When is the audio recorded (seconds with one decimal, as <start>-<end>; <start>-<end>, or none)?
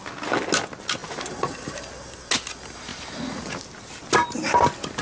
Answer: 0.0-5.0